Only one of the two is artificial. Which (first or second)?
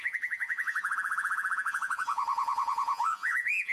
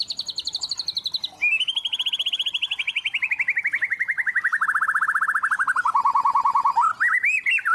first